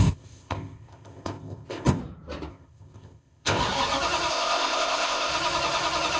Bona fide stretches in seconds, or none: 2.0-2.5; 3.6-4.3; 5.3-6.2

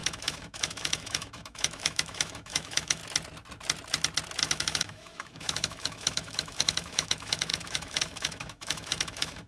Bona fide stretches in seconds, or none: 3.0-4.4